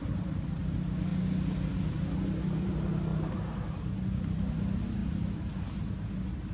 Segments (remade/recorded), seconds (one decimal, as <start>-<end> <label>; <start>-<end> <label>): 0.0-0.6 remade; 0.6-6.5 recorded